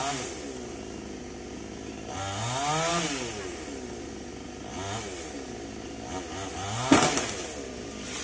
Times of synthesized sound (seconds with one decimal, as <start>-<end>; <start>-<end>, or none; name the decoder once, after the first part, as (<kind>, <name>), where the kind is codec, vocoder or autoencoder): none